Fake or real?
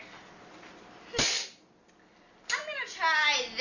real